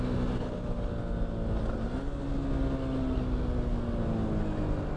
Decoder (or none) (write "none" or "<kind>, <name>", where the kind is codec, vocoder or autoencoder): none